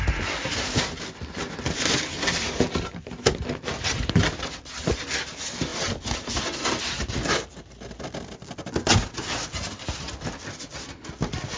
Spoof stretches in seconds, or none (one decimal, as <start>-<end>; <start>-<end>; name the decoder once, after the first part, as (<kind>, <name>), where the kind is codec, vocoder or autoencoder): none